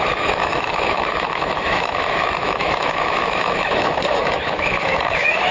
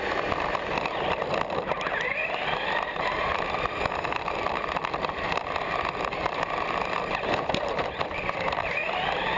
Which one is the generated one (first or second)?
first